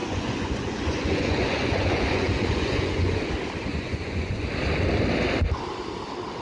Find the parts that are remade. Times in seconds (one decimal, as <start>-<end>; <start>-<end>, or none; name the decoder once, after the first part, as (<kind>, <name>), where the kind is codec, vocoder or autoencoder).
0.0-3.3 (vocoder, Vocos); 3.7-4.5